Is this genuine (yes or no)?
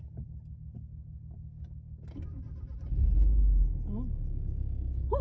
yes